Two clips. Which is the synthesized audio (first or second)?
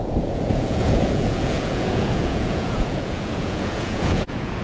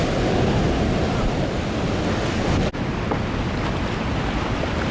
first